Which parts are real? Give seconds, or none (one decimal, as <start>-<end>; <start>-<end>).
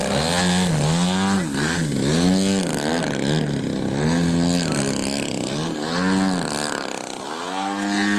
0.0-8.2